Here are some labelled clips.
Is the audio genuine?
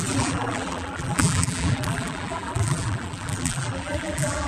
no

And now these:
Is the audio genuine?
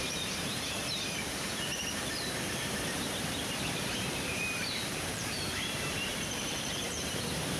no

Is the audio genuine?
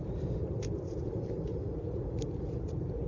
no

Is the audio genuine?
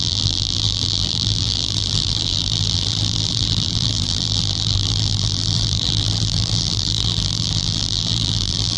no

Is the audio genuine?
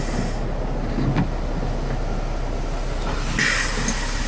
yes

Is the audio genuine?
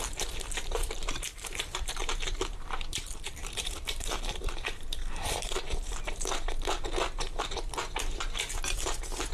no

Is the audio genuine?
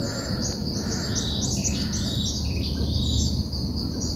yes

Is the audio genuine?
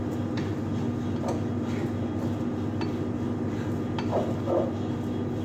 yes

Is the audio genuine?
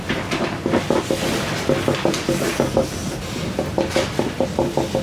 yes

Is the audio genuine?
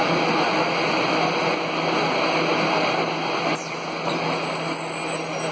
yes